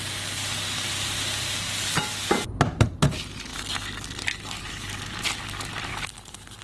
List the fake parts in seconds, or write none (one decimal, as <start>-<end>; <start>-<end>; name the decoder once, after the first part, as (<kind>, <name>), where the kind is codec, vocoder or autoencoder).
5.9-6.6 (codec, HILCodec)